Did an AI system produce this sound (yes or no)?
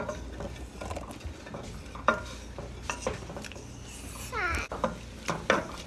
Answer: no